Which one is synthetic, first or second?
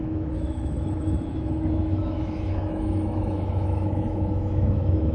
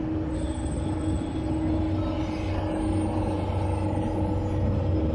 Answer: first